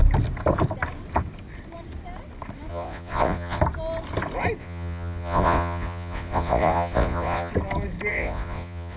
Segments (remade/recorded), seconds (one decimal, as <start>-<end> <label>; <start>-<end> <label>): 0.0-2.7 recorded; 2.7-3.6 remade; 3.6-4.6 recorded; 4.6-7.5 remade; 7.5-8.1 recorded; 8.1-9.0 remade